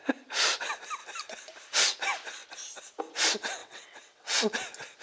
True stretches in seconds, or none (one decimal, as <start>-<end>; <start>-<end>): 0.0-3.6; 4.4-5.0